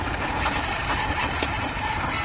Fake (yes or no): no